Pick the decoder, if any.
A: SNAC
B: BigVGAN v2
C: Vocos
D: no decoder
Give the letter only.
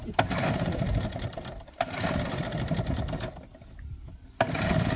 B